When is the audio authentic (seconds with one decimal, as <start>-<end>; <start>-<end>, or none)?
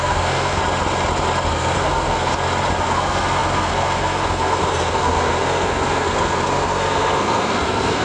0.6-1.5; 2.3-2.8